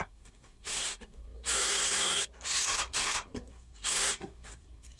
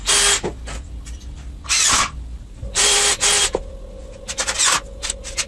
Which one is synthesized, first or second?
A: first